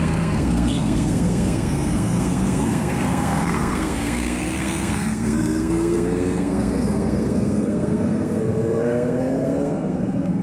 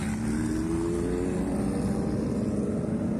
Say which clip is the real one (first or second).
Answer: second